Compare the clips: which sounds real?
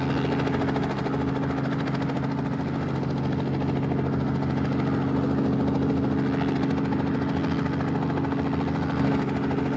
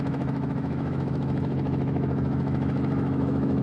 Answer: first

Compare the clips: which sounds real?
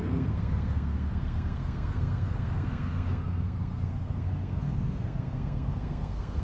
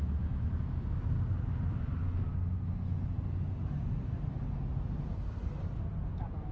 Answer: second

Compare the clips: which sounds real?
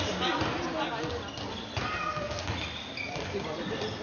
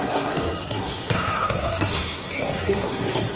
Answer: first